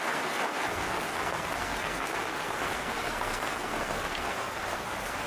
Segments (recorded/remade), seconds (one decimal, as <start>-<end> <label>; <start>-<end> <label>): 0.0-5.3 remade